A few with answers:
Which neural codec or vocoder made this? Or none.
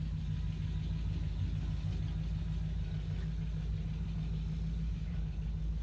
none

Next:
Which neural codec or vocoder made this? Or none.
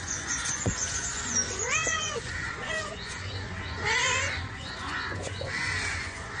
vocoder, Vocos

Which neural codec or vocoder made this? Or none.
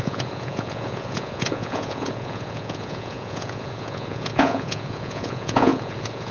vocoder, Vocos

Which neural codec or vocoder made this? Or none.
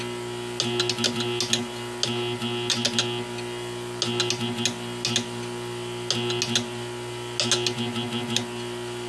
none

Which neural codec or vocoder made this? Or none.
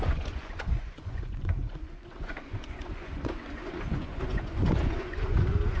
vocoder, Vocos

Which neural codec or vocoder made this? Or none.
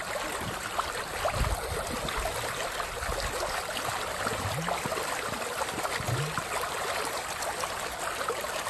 none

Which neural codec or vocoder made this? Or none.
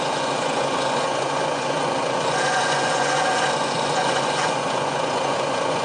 vocoder, Vocos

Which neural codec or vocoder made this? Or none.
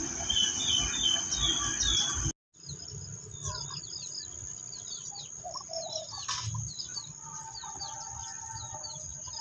none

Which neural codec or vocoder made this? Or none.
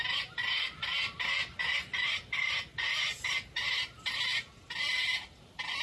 none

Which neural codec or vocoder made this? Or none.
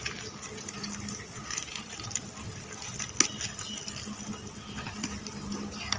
none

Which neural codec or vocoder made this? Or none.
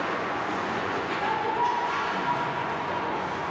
vocoder, Vocos